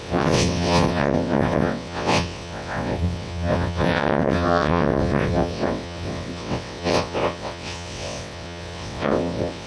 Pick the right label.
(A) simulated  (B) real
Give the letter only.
A